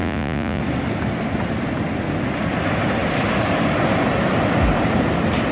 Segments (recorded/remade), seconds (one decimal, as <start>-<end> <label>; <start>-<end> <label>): 0.0-0.6 remade; 0.6-5.5 recorded

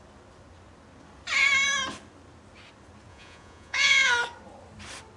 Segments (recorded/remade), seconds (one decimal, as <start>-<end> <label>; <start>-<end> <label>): 0.0-3.1 recorded; 3.1-4.1 remade; 4.1-5.2 recorded

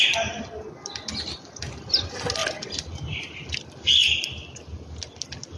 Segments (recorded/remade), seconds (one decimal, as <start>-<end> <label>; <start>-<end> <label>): 0.0-2.4 recorded; 2.4-3.4 remade; 3.4-5.6 recorded

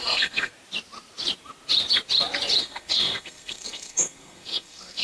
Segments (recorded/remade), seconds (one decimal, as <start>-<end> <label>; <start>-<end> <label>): 0.0-0.5 remade; 0.5-2.6 recorded; 2.6-5.0 remade

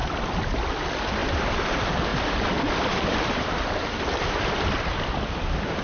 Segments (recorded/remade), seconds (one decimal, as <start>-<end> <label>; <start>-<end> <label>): 0.0-0.5 remade; 0.5-1.2 recorded; 1.2-1.7 remade; 1.7-2.1 recorded; 2.1-5.8 remade

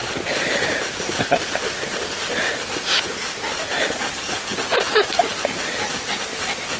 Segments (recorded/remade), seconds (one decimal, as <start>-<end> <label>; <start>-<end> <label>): 0.0-6.8 recorded

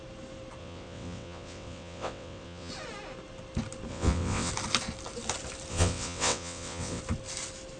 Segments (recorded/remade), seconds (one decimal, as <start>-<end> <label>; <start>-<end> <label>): 0.0-0.6 recorded; 0.6-2.7 remade; 2.7-3.9 recorded; 3.9-4.5 remade; 4.5-5.7 recorded; 5.7-7.0 remade; 7.0-7.8 recorded

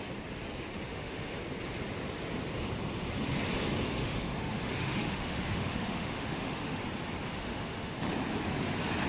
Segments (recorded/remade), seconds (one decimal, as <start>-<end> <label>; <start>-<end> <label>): 0.0-0.9 recorded; 0.9-1.4 remade; 1.4-4.0 recorded; 4.0-6.8 remade; 6.8-7.3 recorded; 7.3-8.1 remade; 8.1-9.1 recorded